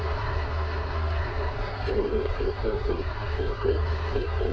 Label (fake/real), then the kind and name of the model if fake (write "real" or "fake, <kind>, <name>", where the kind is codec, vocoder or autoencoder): fake, codec, SNAC